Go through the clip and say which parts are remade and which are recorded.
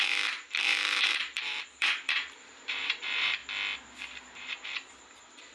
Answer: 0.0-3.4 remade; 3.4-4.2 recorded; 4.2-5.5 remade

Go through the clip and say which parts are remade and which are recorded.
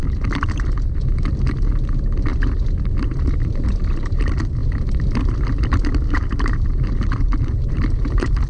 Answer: 0.0-2.3 remade; 2.3-3.0 recorded; 3.0-4.6 remade; 4.6-5.2 recorded; 5.2-8.5 remade